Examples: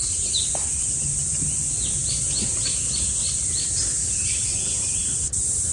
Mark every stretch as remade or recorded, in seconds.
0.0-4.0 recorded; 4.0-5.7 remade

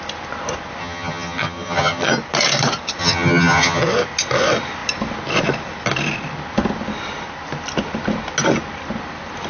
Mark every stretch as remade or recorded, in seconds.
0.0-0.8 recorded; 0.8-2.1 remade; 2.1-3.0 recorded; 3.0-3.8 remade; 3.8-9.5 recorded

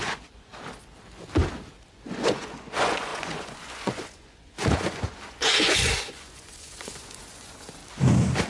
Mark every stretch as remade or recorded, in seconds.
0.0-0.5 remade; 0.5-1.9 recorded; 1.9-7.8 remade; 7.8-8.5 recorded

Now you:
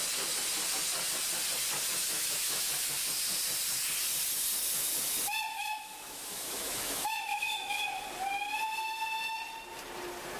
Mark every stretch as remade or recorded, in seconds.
0.0-2.0 recorded; 2.0-2.7 remade; 2.7-5.5 recorded; 5.5-7.8 remade; 7.8-10.4 recorded

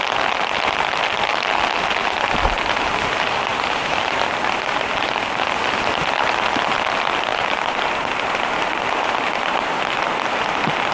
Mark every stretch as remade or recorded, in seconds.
0.0-3.5 recorded; 3.5-5.1 remade; 5.1-7.3 recorded; 7.3-9.8 remade; 9.8-10.9 recorded

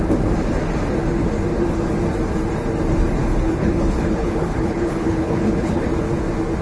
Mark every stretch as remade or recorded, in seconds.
0.0-3.2 recorded; 3.2-5.8 remade; 5.8-6.6 recorded

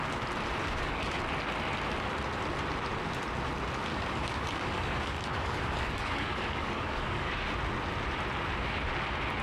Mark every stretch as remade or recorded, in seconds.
0.0-0.6 recorded; 0.6-1.2 remade; 1.2-3.9 recorded; 3.9-7.3 remade; 7.3-9.4 recorded

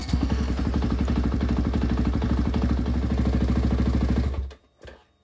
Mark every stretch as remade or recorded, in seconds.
0.0-0.6 remade; 0.6-5.2 recorded